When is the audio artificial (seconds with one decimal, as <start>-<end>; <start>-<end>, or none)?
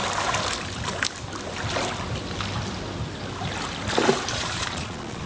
4.3-5.3